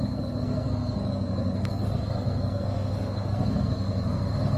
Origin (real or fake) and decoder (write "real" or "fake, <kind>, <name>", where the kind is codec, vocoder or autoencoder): fake, codec, SNAC